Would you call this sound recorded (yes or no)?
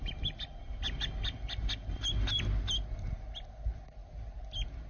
yes